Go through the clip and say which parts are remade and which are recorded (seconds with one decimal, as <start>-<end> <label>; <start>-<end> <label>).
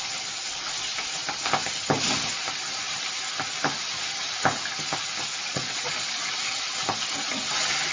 0.0-5.4 recorded; 5.4-6.3 remade; 6.3-7.9 recorded